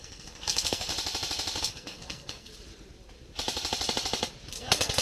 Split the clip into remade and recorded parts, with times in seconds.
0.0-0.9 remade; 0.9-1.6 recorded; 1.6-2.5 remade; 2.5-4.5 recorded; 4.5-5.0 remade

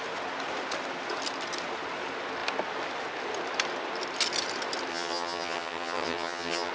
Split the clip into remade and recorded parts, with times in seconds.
0.0-4.9 recorded; 4.9-6.7 remade

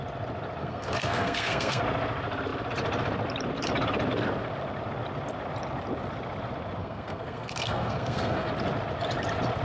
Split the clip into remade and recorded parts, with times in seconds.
0.0-0.6 recorded; 0.6-1.8 remade; 1.8-6.8 recorded; 6.8-8.5 remade; 8.5-9.6 recorded

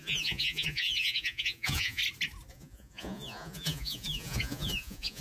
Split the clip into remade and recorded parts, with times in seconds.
0.0-2.0 remade; 2.0-2.5 recorded; 2.5-5.2 remade

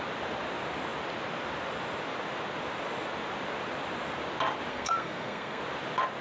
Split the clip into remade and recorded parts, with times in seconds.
0.0-4.7 recorded; 4.7-5.6 remade; 5.6-6.2 recorded

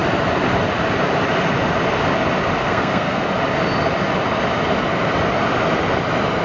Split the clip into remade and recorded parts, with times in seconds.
0.0-2.6 recorded; 2.6-3.2 remade; 3.2-6.4 recorded

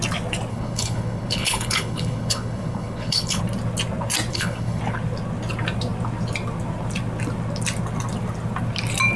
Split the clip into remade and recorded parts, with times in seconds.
0.0-0.5 recorded; 0.5-3.4 remade; 3.4-4.3 recorded; 4.3-4.8 remade; 4.8-9.2 recorded

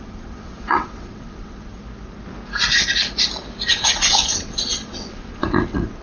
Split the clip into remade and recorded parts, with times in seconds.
0.0-1.8 remade; 1.8-3.7 recorded; 3.7-6.0 remade